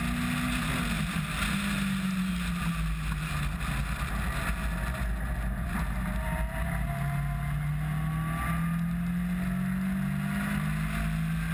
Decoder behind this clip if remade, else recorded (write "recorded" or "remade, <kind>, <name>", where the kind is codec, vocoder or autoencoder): recorded